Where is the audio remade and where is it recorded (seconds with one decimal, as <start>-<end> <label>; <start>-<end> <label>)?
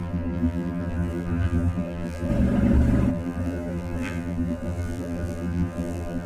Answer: 0.0-2.3 remade; 2.3-3.1 recorded; 3.1-6.3 remade